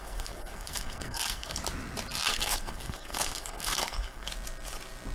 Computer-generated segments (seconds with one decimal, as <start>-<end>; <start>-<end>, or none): 0.0-1.6; 2.3-4.3